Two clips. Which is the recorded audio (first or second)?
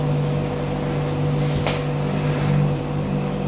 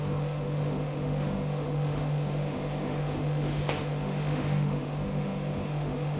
first